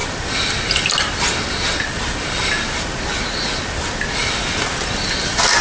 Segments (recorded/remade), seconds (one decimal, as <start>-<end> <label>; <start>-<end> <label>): 0.0-5.6 recorded